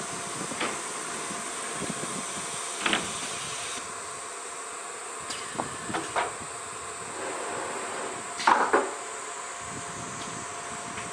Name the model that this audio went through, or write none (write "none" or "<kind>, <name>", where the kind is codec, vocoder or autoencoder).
none